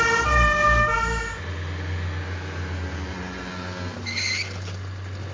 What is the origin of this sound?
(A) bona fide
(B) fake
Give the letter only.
A